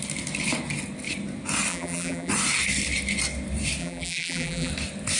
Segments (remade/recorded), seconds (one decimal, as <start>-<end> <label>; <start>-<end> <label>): 0.0-1.7 recorded; 1.7-2.3 remade; 2.3-3.8 recorded; 3.8-4.7 remade; 4.7-5.2 recorded